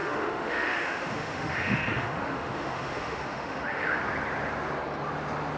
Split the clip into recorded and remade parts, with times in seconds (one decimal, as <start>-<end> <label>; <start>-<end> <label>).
0.0-4.0 remade; 4.0-5.6 recorded